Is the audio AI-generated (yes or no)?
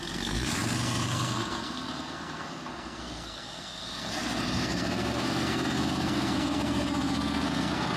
yes